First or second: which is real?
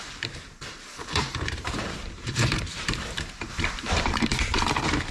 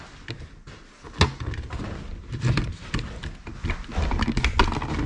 second